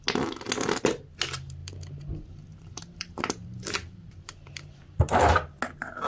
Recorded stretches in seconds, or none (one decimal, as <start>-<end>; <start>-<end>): 0.0-1.6; 5.3-6.1